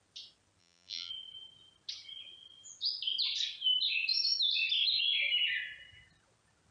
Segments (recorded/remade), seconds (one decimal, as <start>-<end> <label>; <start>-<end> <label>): 0.0-0.6 recorded; 0.6-1.1 remade; 1.1-6.7 recorded